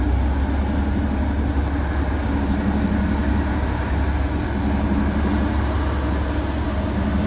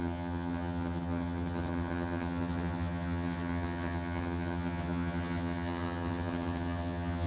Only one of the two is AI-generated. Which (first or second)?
second